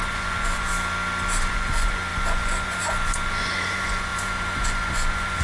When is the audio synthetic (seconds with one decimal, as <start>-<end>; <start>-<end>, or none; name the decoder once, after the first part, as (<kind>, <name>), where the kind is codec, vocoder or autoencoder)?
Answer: 0.0-0.7 (vocoder, Vocos); 1.4-5.4